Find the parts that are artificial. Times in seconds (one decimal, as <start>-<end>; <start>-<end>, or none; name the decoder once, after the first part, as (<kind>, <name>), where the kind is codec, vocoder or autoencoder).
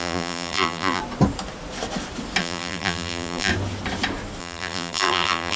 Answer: 0.0-1.0 (vocoder, BigVGAN v2); 2.4-3.5; 4.4-5.6